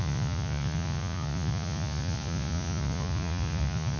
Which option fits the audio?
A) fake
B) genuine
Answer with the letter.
A